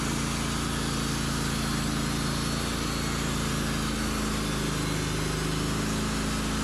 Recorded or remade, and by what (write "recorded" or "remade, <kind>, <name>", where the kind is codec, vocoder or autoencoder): recorded